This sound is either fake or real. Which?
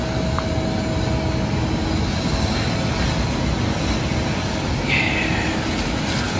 real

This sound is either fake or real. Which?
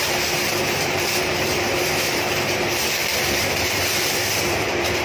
fake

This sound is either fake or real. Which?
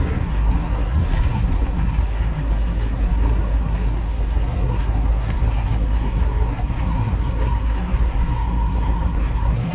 fake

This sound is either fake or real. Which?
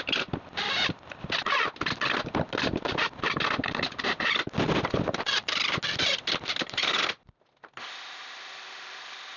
real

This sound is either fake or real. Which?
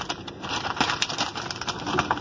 real